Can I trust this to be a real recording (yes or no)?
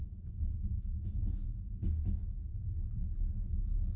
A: yes